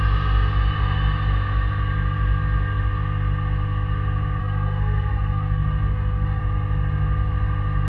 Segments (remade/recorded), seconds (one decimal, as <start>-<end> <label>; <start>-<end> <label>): 0.0-4.4 recorded; 4.4-6.4 remade; 6.4-7.9 recorded